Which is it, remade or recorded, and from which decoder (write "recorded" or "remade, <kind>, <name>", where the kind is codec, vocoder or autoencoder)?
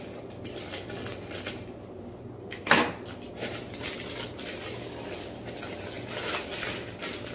recorded